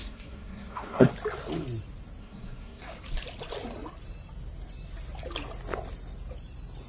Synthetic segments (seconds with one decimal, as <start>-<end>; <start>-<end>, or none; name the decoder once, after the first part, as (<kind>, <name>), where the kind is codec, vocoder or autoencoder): 0.0-1.1 (codec, SNAC); 2.2-2.8